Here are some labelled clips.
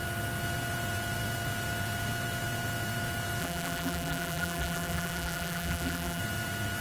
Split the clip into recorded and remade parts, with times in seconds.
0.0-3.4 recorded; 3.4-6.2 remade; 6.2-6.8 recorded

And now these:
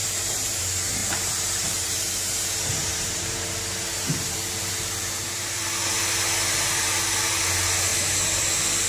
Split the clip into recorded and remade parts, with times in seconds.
0.0-0.6 remade; 0.6-1.0 recorded; 1.0-3.5 remade; 3.5-3.9 recorded; 3.9-5.6 remade; 5.6-7.9 recorded; 7.9-8.5 remade; 8.5-8.9 recorded

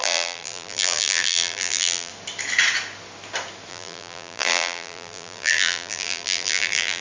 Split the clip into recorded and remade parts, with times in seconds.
0.0-2.1 remade; 2.1-3.7 recorded; 3.7-7.0 remade

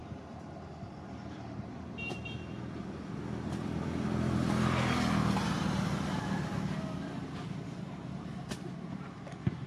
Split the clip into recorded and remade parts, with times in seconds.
0.0-9.7 remade

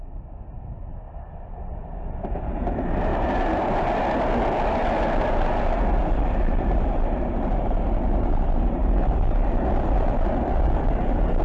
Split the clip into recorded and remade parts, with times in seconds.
0.0-11.4 recorded

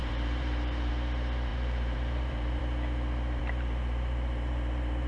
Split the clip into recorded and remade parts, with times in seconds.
0.0-0.9 remade; 0.9-1.5 recorded; 1.5-2.6 remade; 2.6-3.4 recorded; 3.4-5.1 remade

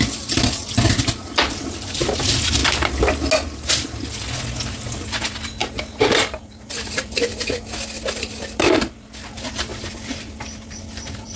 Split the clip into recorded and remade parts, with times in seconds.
0.0-2.6 remade; 2.6-4.9 recorded; 4.9-5.6 remade; 5.6-6.1 recorded; 6.1-7.3 remade; 7.3-8.1 recorded; 8.1-11.4 remade

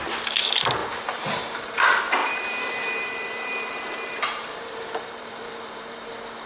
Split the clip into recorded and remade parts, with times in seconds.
0.0-0.8 recorded; 0.8-1.8 remade; 1.8-2.2 recorded; 2.2-6.1 remade; 6.1-6.5 recorded